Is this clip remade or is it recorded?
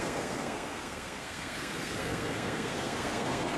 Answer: remade